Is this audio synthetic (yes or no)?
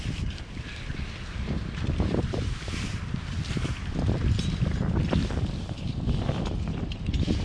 yes